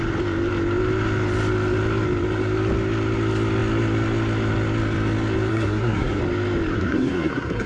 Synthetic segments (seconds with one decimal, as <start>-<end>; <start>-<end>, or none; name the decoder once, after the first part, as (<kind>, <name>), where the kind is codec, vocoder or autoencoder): 5.5-6.2 (codec, SNAC); 6.7-7.7